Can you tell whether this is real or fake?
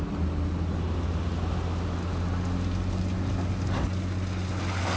real